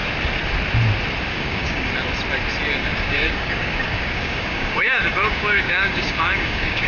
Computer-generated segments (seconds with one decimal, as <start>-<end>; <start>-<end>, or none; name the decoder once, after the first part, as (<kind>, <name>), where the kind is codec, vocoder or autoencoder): 1.3-1.9 (codec, DAC); 2.8-6.9